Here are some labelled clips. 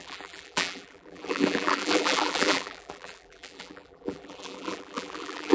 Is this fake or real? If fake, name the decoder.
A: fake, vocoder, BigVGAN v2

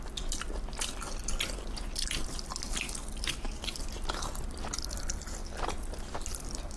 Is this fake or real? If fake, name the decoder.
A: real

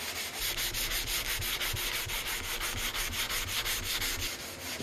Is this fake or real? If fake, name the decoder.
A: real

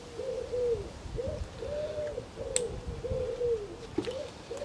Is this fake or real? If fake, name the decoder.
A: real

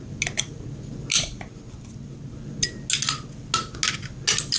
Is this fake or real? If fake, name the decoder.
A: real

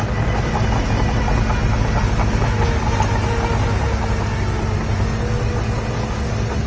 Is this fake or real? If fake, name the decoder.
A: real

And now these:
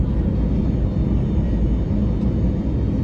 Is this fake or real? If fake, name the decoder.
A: real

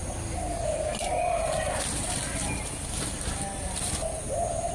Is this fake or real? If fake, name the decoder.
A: real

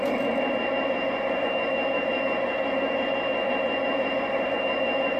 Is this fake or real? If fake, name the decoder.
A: fake, vocoder, BigVGAN v2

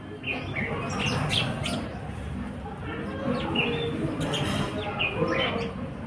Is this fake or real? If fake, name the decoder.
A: real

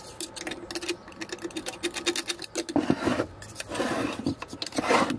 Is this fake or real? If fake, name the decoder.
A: real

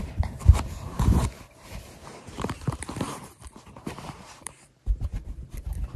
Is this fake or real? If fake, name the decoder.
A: fake, vocoder, BigVGAN v2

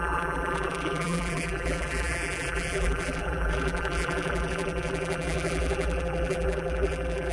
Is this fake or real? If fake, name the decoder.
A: fake, vocoder, BigVGAN v2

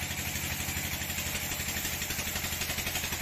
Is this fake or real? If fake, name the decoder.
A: real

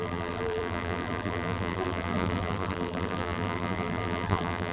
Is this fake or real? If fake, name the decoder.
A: fake, vocoder, BigVGAN v2